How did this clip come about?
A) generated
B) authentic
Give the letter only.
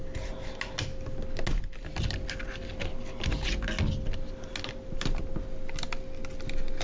B